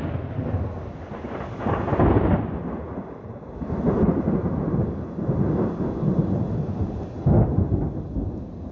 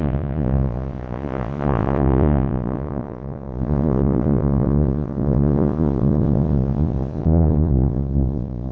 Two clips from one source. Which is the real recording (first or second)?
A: first